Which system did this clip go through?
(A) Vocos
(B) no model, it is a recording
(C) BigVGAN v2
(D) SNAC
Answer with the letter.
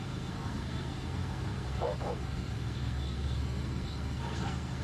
D